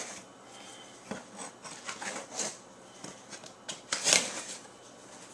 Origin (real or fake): real